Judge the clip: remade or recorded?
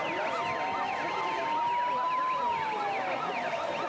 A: recorded